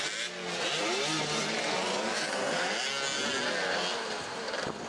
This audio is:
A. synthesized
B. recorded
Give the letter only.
B